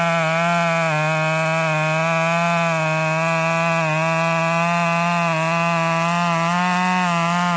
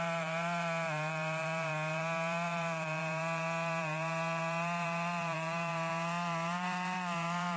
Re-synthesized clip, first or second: second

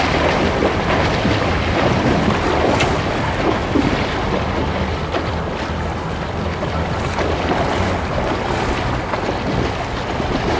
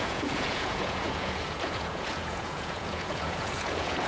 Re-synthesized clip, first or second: second